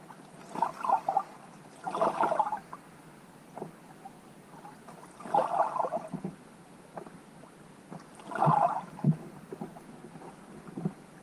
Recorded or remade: recorded